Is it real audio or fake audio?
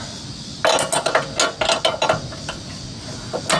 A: real